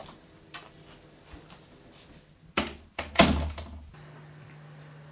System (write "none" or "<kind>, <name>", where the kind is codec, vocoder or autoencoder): none